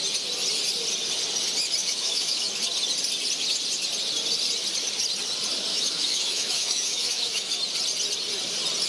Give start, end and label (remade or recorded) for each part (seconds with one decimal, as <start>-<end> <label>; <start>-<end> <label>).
0.0-1.8 recorded; 1.8-2.6 remade; 2.6-5.7 recorded; 5.7-7.5 remade; 7.5-8.9 recorded